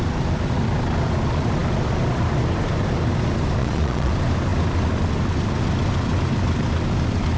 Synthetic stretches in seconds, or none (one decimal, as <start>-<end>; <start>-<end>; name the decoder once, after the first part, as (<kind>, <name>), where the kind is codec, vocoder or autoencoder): 3.6-4.1 (vocoder, Vocos)